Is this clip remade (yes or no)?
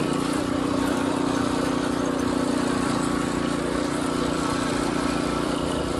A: yes